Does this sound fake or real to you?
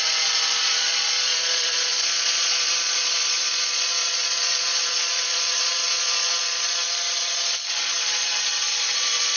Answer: fake